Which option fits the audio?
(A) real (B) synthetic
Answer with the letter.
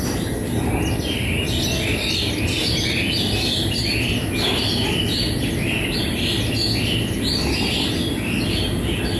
A